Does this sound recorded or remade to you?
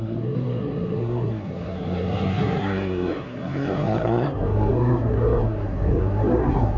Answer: remade